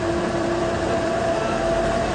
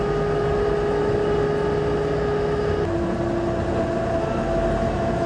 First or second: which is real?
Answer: second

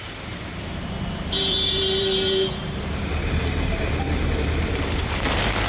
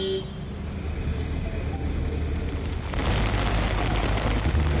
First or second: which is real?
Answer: second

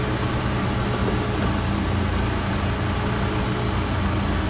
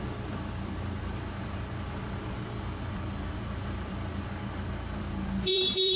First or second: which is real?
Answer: first